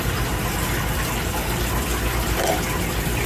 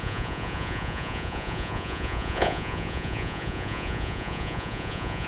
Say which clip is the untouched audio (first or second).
first